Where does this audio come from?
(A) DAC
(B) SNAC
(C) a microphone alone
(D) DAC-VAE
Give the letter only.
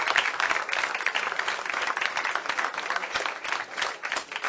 C